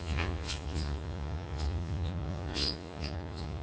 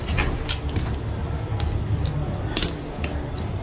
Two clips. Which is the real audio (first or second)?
second